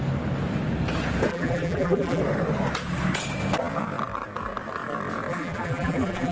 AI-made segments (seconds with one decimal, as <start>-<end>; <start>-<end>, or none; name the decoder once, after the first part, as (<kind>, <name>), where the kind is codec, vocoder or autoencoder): 1.3-2.2 (vocoder, BigVGAN v2); 5.3-6.3